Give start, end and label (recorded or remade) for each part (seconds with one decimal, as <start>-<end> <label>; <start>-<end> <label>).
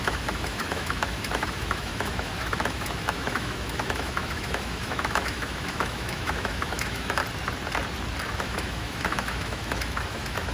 0.0-7.2 remade; 7.2-8.3 recorded; 8.3-10.5 remade